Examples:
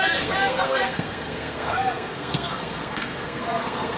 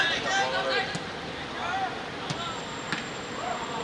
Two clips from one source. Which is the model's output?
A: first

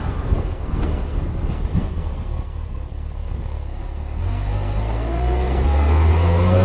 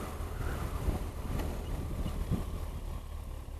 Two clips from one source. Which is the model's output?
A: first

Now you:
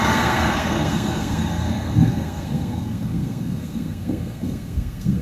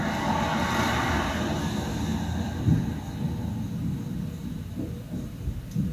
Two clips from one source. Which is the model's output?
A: first